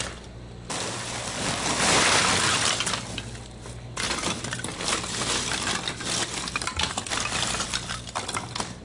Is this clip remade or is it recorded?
recorded